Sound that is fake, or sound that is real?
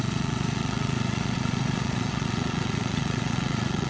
fake